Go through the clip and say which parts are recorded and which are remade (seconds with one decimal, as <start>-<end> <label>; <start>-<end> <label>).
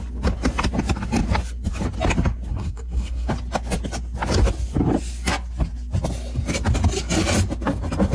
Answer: 0.0-2.5 recorded; 2.5-3.3 remade; 3.3-8.1 recorded